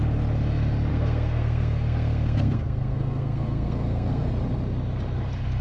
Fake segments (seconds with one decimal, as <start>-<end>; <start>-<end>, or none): 0.9-4.3

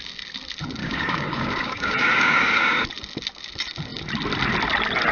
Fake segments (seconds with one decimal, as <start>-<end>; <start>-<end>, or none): 0.8-2.9